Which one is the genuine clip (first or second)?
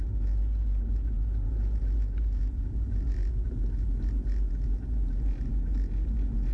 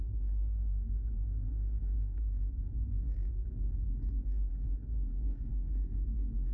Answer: first